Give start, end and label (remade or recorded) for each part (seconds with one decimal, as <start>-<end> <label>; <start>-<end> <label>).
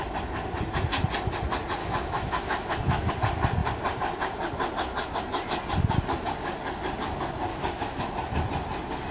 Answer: 0.0-1.8 recorded; 1.8-3.1 remade; 3.1-7.5 recorded; 7.5-8.1 remade; 8.1-9.1 recorded